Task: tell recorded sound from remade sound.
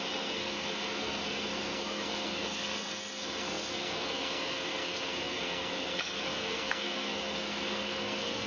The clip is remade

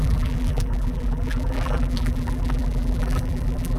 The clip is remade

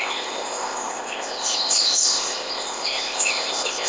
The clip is remade